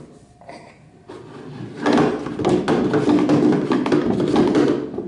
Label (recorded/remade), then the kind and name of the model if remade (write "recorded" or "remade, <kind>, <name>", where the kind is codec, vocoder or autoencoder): recorded